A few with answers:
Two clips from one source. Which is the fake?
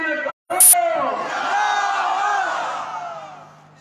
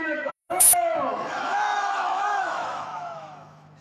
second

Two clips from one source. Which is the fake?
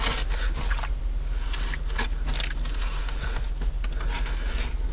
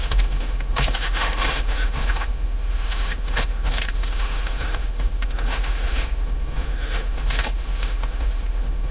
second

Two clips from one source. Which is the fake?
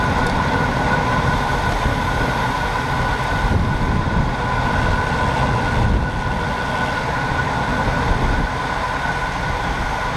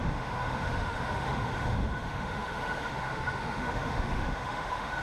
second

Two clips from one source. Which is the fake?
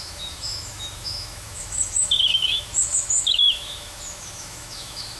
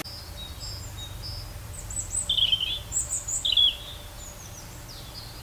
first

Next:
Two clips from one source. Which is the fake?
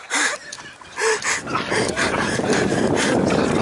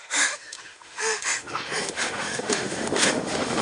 second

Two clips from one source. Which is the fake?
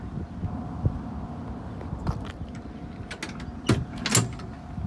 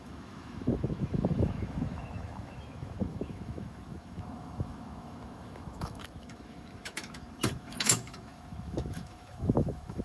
second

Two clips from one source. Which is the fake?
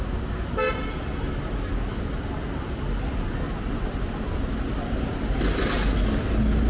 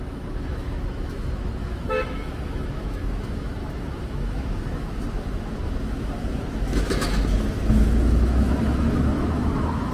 second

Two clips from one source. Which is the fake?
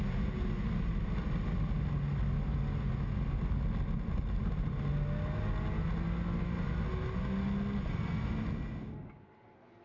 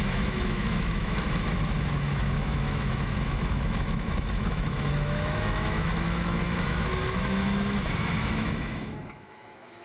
second